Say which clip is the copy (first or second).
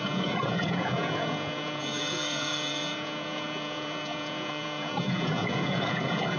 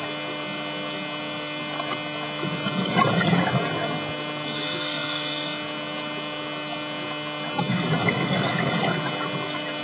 first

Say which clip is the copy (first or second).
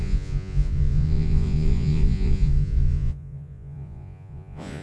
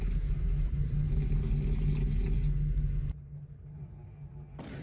first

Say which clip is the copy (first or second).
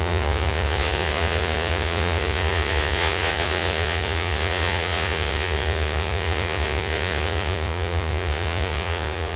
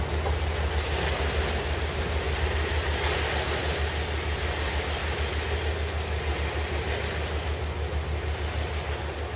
first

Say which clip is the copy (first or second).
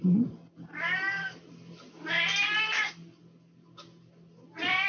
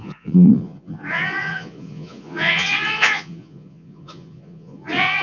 second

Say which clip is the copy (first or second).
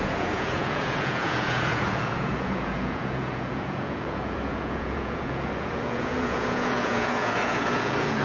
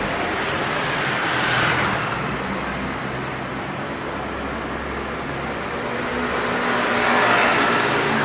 first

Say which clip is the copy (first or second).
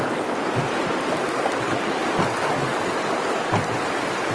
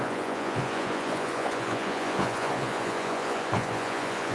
second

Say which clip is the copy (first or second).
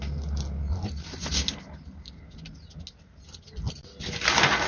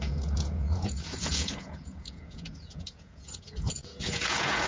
second